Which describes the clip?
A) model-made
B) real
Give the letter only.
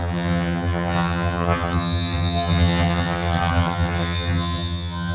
A